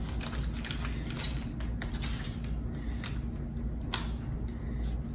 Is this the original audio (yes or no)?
yes